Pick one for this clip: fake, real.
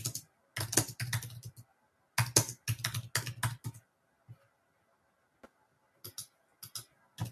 real